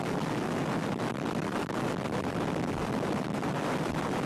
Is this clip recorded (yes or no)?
yes